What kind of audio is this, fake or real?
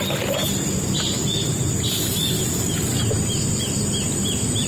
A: real